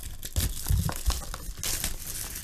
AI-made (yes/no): no